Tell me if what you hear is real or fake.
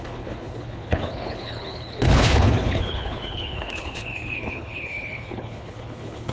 fake